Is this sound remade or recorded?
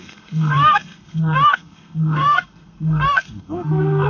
remade